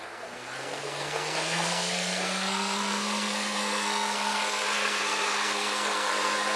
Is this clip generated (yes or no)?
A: yes